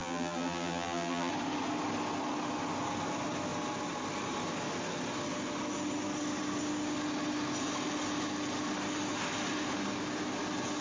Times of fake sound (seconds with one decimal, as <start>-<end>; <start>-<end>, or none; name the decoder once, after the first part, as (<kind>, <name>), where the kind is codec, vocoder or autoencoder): 0.0-1.3 (vocoder, BigVGAN v2)